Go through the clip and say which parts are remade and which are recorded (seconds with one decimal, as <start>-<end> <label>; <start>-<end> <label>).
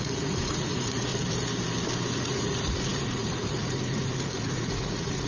0.0-1.1 remade; 1.1-2.1 recorded; 2.1-5.3 remade